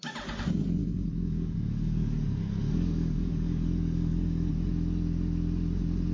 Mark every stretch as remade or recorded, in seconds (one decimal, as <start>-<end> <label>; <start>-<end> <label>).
0.0-0.8 recorded; 0.8-4.5 remade; 4.5-6.1 recorded